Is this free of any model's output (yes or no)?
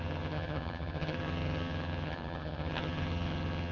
no